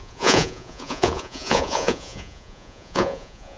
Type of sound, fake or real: fake